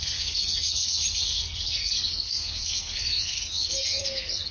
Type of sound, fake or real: fake